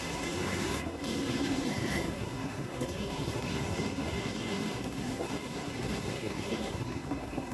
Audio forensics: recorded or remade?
remade